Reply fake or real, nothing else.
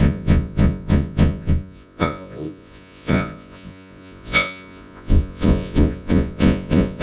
fake